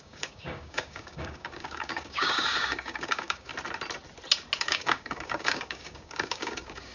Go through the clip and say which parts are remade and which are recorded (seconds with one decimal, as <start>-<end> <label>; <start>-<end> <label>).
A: 0.0-3.5 remade; 3.5-4.6 recorded; 4.6-6.9 remade